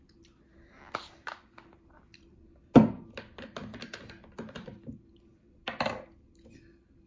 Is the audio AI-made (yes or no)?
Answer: no